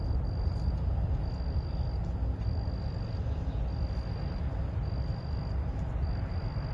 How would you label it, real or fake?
real